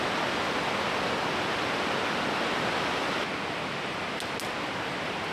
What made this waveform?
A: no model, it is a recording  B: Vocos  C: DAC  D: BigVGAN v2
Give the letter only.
A